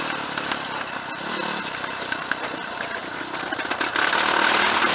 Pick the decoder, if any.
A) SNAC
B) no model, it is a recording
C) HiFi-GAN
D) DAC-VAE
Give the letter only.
B